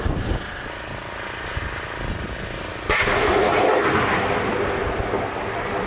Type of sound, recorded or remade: recorded